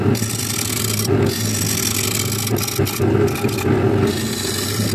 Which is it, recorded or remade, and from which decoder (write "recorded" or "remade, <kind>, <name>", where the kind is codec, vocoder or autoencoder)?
recorded